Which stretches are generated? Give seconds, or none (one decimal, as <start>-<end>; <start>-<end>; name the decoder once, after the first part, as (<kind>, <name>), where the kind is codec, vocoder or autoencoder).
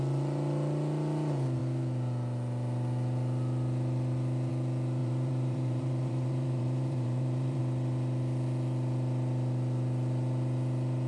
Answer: 5.0-7.6 (vocoder, BigVGAN v2)